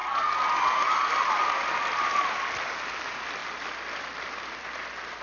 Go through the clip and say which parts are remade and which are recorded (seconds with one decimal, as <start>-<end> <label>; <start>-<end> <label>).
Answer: 0.0-5.2 recorded